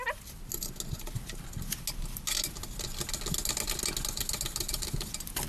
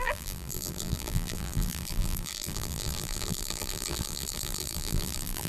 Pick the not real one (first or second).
second